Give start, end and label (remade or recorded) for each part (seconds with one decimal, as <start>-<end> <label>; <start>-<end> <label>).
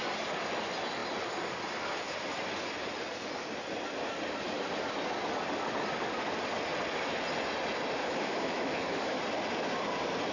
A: 0.0-8.0 recorded; 8.0-9.2 remade; 9.2-10.3 recorded